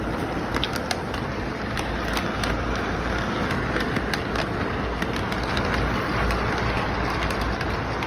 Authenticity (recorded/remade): recorded